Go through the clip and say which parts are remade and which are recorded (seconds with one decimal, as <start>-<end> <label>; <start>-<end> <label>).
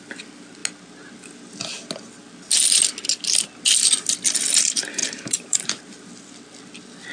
0.0-5.0 recorded; 5.0-5.8 remade; 5.8-7.1 recorded